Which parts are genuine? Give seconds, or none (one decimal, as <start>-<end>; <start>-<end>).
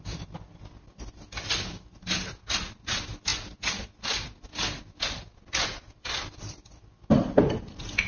0.0-8.1